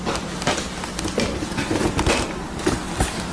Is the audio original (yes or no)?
yes